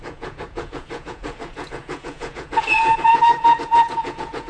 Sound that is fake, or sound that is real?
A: fake